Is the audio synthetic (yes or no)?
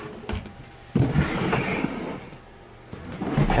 no